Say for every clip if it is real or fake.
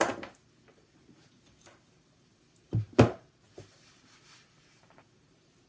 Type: fake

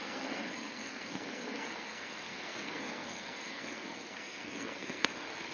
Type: fake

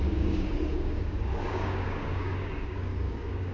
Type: fake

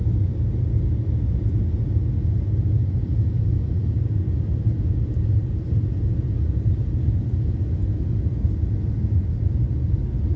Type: real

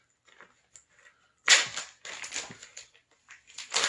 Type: real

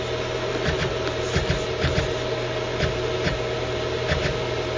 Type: real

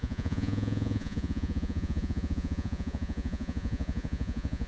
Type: fake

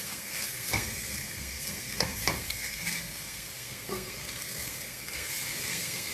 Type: fake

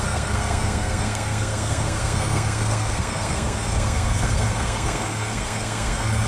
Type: fake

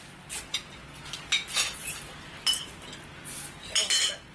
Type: real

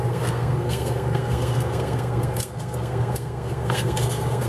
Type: fake